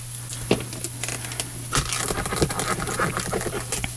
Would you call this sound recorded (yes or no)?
yes